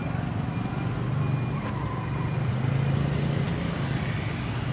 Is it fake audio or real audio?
real